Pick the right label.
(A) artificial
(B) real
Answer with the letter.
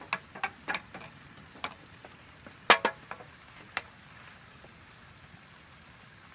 B